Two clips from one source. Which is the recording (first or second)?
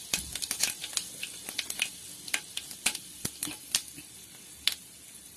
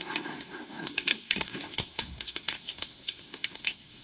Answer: first